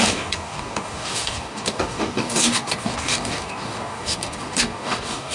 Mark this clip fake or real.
fake